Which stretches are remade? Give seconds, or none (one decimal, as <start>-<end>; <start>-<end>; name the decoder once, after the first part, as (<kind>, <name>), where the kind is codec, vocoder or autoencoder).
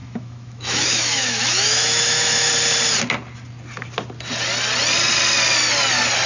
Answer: 0.0-2.5 (autoencoder, DAC-VAE)